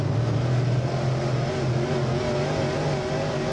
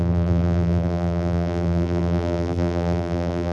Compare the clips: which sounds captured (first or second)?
first